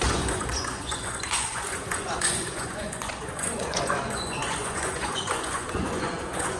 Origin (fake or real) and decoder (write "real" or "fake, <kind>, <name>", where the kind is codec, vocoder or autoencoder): fake, vocoder, Vocos